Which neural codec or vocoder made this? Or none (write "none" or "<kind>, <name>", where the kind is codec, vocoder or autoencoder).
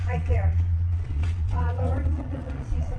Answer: vocoder, Vocos